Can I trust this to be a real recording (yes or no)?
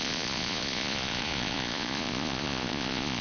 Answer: no